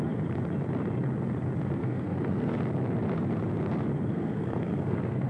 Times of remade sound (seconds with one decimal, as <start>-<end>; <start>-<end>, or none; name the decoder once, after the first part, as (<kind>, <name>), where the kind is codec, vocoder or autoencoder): 1.8-2.6 (codec, SNAC); 4.1-5.3